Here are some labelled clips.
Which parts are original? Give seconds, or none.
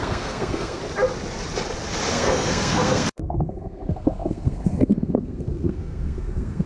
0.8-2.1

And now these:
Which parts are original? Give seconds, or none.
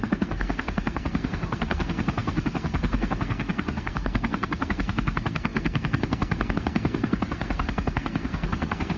none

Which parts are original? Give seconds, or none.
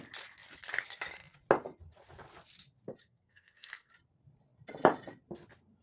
0.0-3.0; 3.9-5.8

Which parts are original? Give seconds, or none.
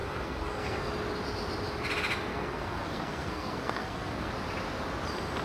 0.9-2.3; 4.3-5.4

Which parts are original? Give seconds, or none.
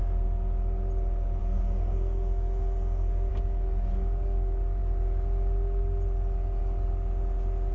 0.0-1.4; 3.3-7.7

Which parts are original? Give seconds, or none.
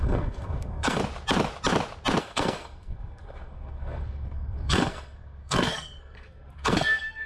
1.0-2.2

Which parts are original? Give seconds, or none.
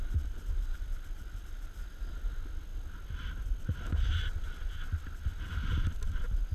0.0-6.5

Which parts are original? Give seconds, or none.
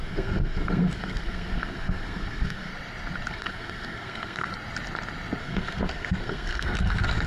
2.7-3.3; 4.5-5.4